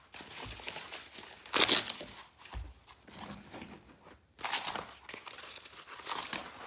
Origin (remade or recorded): recorded